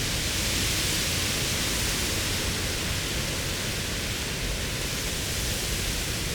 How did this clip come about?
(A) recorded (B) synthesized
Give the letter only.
A